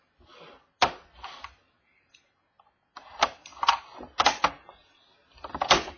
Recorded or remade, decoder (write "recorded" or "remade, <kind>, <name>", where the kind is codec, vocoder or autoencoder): recorded